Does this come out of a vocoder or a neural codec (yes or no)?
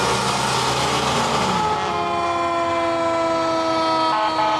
no